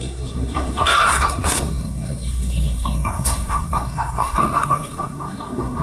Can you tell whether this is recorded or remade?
remade